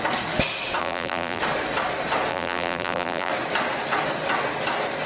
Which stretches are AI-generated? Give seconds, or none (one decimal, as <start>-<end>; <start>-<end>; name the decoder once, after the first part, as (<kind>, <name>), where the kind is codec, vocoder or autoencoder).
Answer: 0.8-1.4 (vocoder, BigVGAN v2); 2.3-3.3